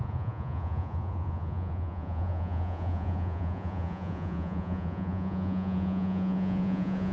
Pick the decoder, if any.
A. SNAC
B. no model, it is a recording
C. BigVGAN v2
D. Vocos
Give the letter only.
D